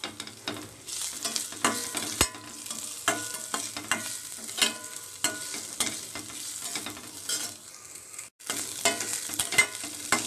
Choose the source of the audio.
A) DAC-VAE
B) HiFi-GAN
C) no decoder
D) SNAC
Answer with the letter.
C